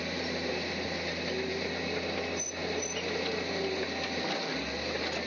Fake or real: real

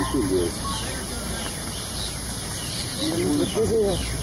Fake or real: real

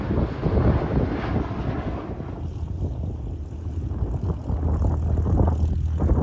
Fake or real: real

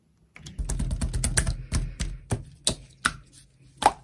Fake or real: real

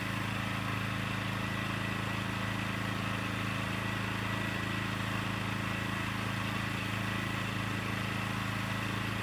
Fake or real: real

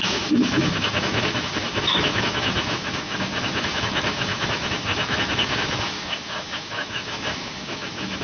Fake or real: fake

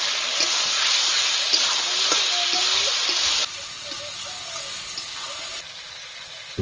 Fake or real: real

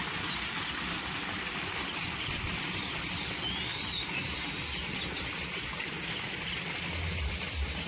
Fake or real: real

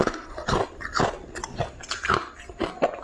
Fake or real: real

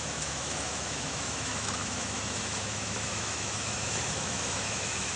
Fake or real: fake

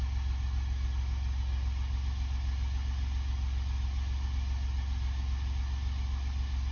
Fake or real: real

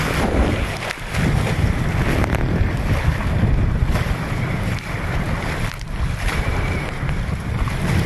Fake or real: real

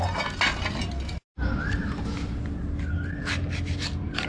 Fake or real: real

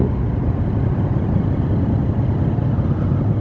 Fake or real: real